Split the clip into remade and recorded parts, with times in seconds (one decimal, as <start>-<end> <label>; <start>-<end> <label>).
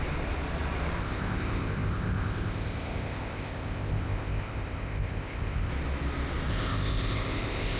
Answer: 0.0-1.0 recorded; 1.0-5.7 remade; 5.7-6.5 recorded; 6.5-7.8 remade